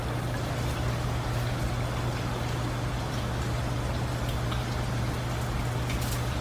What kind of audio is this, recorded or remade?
recorded